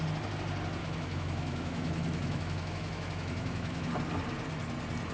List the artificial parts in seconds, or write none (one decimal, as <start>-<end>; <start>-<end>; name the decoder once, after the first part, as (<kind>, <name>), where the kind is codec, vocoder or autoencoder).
0.8-3.9 (autoencoder, DAC-VAE)